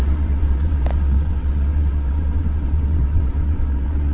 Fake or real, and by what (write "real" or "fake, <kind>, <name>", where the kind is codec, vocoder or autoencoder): fake, vocoder, WaveNeXt